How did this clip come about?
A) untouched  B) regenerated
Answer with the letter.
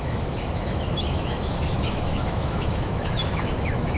B